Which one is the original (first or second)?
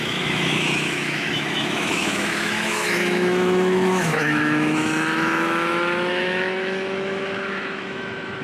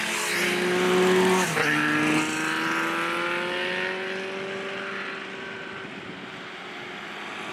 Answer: second